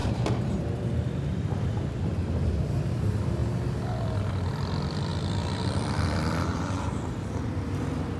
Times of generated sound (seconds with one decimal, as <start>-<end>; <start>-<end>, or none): 0.0-3.4; 4.3-8.2